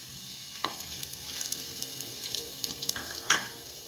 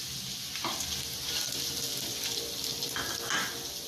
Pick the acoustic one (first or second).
second